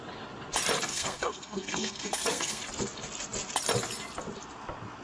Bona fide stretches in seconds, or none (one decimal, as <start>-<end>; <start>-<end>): 0.0-0.9; 2.6-5.0